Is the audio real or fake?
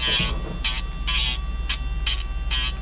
real